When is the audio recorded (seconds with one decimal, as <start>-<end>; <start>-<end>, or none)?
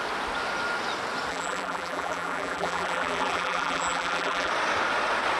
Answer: 0.0-1.3; 4.5-5.4